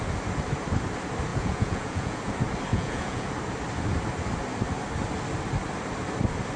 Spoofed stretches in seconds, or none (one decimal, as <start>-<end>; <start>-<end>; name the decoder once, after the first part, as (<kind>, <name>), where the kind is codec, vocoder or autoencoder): 1.3-2.3 (vocoder, Vocos); 2.7-3.3